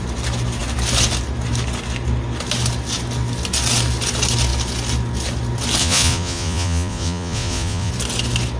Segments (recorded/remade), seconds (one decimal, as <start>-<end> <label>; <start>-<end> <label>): 0.0-5.8 recorded; 5.8-7.9 remade; 7.9-8.6 recorded